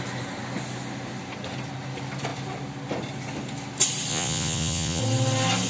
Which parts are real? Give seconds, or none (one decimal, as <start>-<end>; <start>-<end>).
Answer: 0.0-4.1; 5.0-5.7